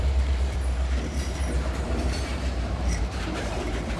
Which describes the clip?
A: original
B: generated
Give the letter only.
B